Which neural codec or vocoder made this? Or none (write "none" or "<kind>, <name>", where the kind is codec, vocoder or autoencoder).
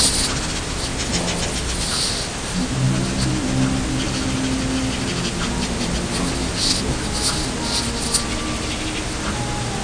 none